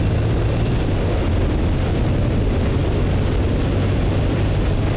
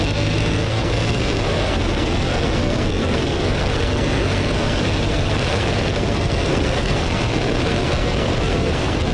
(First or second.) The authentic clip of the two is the first